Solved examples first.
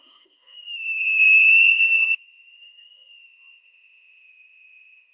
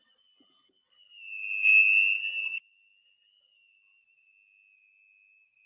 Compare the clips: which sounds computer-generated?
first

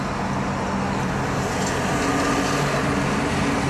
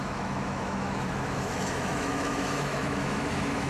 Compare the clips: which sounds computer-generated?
second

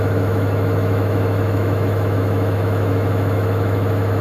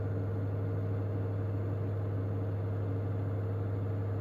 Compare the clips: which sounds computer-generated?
first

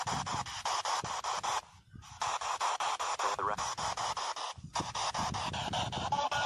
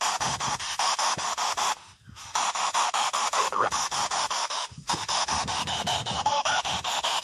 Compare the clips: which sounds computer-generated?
second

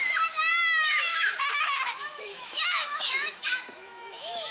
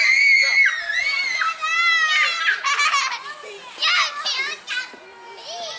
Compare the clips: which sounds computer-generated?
first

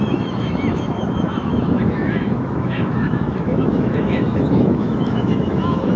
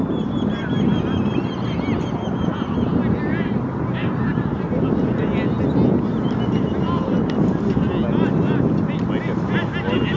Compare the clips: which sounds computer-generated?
first